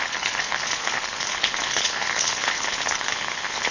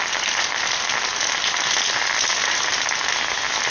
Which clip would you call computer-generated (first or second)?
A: first